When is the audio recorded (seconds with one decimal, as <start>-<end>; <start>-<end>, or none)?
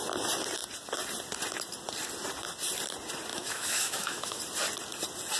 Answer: 0.0-3.3; 4.4-5.4